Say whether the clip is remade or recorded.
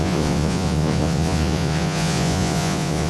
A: remade